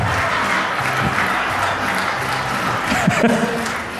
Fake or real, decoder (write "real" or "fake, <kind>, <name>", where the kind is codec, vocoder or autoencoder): real